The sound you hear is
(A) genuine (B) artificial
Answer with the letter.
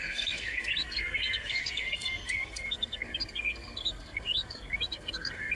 B